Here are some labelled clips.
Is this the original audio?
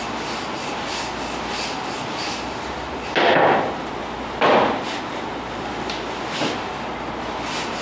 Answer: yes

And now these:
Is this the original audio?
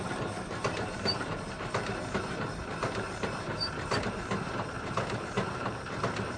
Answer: no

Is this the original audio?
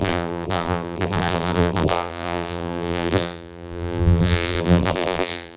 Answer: no